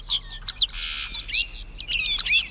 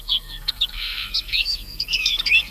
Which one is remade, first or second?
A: second